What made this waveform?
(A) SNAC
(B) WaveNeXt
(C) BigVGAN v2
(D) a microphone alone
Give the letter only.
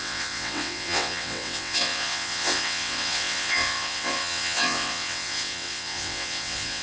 B